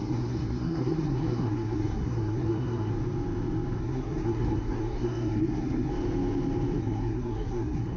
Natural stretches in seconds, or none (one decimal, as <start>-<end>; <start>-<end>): 2.9-3.8; 5.9-6.8